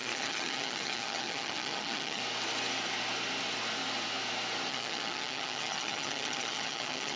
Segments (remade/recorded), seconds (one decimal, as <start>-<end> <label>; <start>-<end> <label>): 0.0-2.2 remade; 2.2-4.7 recorded; 4.7-7.2 remade